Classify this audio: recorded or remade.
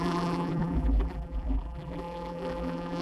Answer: remade